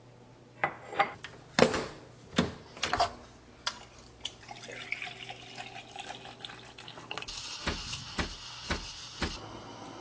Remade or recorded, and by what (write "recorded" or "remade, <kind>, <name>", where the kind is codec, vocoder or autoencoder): recorded